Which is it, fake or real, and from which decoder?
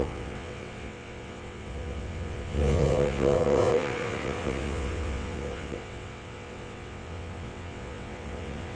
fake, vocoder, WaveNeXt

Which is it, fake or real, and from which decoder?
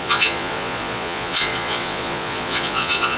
fake, vocoder, Vocos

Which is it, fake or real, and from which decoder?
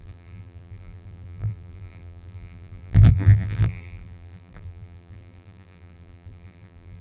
fake, vocoder, BigVGAN v2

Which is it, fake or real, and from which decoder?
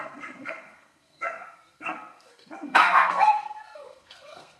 fake, codec, SNAC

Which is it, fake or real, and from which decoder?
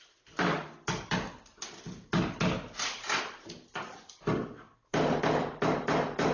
real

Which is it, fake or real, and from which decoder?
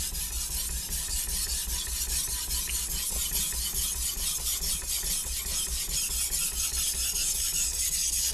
real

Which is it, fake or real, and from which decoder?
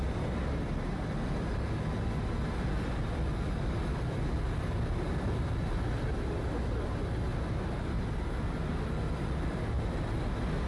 real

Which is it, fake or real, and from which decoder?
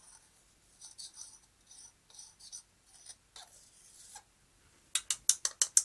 real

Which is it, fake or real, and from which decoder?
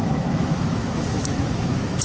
fake, autoencoder, DAC-VAE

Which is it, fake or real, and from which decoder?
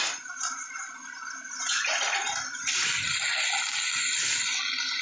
real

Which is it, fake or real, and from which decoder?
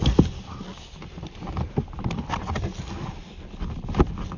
real